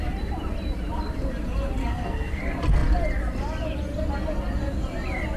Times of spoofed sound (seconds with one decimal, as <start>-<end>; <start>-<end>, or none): 1.8-2.4